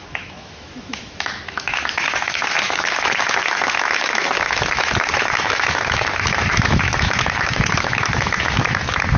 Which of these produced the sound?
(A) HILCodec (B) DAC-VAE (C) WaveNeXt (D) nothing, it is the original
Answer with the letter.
B